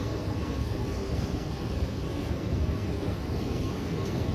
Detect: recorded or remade remade